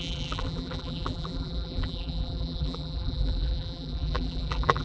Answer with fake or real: fake